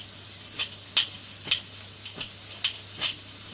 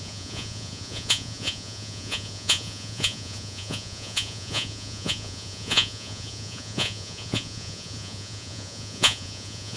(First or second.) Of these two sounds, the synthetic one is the second